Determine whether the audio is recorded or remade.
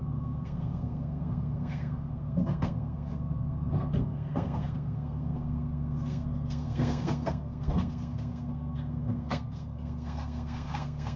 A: remade